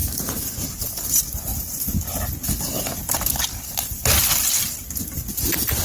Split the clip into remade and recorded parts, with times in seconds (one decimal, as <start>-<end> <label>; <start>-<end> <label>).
0.0-1.5 recorded; 1.5-2.1 remade; 2.1-3.0 recorded; 3.0-4.7 remade; 4.7-5.8 recorded